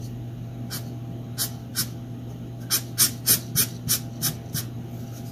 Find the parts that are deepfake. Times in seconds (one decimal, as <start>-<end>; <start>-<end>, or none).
none